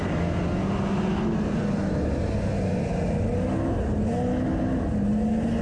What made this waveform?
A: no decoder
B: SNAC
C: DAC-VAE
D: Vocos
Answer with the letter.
A